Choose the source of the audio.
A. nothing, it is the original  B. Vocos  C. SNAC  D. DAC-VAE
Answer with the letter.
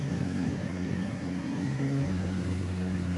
C